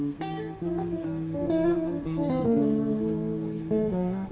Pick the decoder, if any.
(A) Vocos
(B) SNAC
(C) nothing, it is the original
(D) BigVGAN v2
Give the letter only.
B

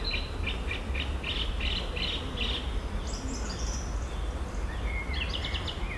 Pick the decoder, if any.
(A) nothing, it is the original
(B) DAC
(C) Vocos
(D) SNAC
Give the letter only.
A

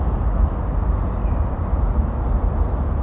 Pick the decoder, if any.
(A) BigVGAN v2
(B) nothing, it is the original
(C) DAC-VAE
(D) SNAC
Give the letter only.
B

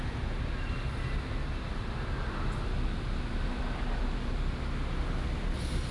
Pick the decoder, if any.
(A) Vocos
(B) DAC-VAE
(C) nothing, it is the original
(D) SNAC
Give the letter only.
C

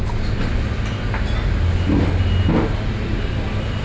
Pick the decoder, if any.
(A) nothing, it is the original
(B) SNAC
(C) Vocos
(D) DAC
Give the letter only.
A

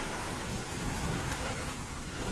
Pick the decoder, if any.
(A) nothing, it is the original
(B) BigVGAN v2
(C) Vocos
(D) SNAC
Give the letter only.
D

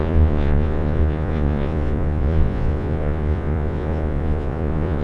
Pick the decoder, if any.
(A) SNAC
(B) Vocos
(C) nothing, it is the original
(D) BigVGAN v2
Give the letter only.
B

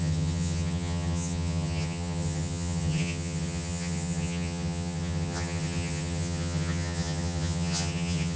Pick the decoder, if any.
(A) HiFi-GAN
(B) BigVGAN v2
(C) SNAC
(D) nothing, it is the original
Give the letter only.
A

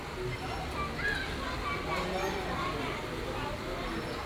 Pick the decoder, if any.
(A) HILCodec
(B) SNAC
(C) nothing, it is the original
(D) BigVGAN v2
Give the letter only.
C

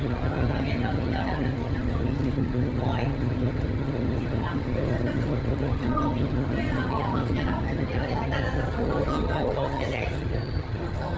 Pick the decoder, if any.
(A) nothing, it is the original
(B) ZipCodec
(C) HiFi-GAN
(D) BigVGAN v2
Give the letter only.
C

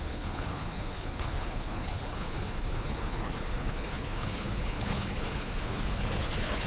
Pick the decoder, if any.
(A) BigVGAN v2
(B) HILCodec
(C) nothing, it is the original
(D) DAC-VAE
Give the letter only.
B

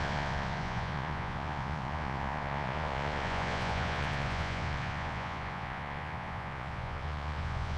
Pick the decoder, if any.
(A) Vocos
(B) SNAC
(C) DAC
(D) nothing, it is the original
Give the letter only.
A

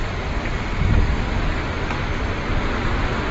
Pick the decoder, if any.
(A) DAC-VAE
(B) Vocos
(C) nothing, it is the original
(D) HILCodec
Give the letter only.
C